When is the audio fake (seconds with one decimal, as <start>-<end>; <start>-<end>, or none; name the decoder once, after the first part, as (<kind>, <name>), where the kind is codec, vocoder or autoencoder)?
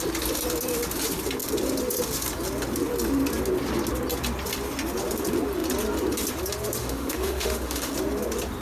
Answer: 6.8-7.9 (autoencoder, DAC-VAE)